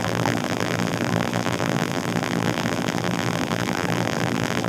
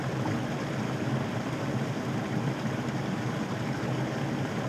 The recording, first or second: second